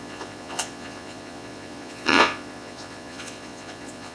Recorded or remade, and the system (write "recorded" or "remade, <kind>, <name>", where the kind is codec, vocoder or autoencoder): remade, vocoder, Vocos